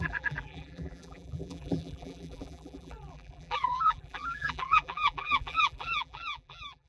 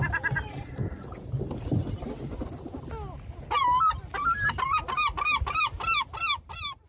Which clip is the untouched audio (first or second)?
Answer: second